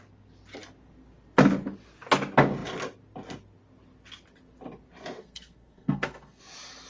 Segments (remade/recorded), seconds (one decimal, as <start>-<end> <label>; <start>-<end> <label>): 0.0-5.2 recorded; 5.2-6.4 remade; 6.4-6.9 recorded